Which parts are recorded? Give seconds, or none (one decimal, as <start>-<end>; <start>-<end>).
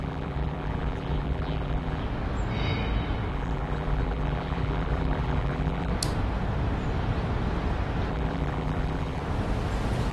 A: 2.0-3.3; 5.9-8.1; 9.2-10.1